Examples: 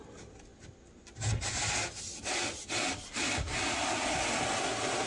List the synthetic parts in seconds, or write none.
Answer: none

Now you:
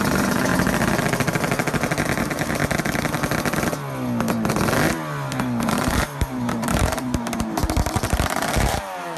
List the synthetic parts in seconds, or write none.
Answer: 0.0-0.5 (vocoder, BigVGAN v2); 2.2-2.6; 5.7-9.2

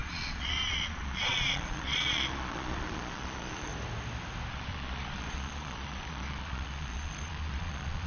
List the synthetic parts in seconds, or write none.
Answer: 0.0-3.7 (vocoder, Vocos); 4.5-8.1

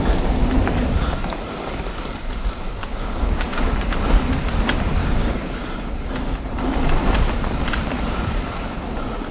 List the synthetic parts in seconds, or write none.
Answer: 2.8-3.7 (codec, DAC); 5.0-5.6

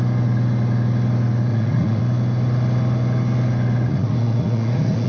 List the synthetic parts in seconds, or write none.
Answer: 1.5-2.0 (vocoder, Vocos); 3.9-5.1

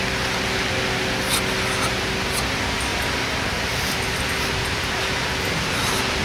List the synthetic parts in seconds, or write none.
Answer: none